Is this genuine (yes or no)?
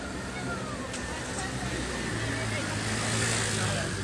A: yes